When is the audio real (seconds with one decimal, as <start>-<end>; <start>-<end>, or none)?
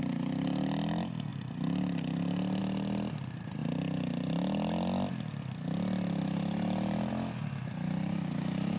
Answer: 0.0-8.8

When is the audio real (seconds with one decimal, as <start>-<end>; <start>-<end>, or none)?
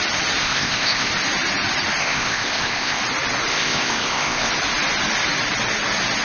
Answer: 0.0-0.4; 1.1-2.0; 3.0-3.5; 4.5-6.2